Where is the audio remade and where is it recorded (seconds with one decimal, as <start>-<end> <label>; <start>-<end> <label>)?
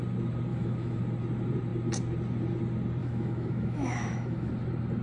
0.0-0.5 recorded; 0.5-1.0 remade; 1.0-3.0 recorded; 3.0-4.5 remade; 4.5-5.0 recorded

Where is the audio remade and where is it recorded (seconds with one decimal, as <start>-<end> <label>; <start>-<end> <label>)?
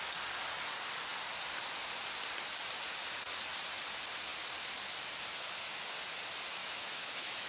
0.0-6.6 recorded; 6.6-7.5 remade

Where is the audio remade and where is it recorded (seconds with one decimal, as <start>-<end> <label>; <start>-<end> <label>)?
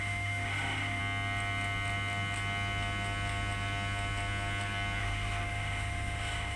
0.0-1.0 remade; 1.0-5.0 recorded; 5.0-6.6 remade